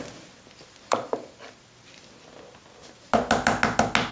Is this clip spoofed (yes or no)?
no